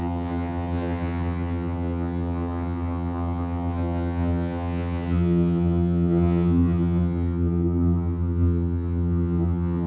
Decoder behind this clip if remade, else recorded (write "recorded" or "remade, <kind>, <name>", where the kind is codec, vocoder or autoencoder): remade, vocoder, HiFi-GAN